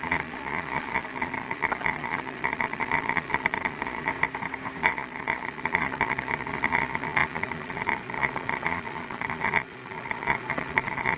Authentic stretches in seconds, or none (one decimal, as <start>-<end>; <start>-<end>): 4.1-4.8